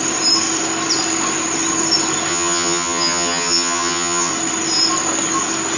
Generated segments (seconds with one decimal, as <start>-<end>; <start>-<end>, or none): 2.3-4.3